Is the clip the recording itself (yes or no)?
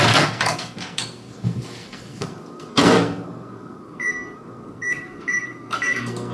no